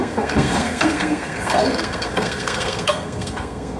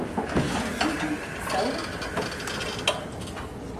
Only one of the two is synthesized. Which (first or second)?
first